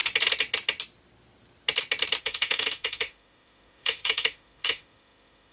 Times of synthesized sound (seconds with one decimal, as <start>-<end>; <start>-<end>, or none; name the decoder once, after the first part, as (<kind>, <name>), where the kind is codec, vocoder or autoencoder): 2.2-5.5 (autoencoder, DAC-VAE)